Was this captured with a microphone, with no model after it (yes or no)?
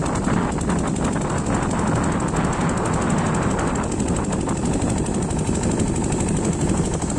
yes